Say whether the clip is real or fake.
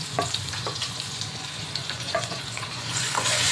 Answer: fake